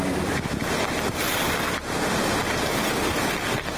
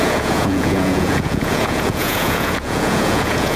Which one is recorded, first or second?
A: first